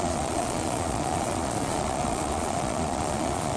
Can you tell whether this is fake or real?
fake